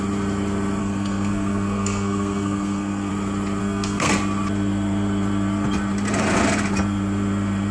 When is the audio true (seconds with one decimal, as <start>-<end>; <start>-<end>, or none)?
0.0-0.8; 3.1-3.6; 4.1-7.7